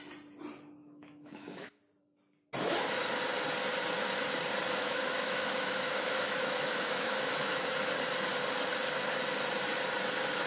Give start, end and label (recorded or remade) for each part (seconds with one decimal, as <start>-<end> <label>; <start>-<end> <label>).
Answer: 0.0-0.8 recorded; 0.8-1.8 remade; 1.8-4.8 recorded; 4.8-7.9 remade; 7.9-10.5 recorded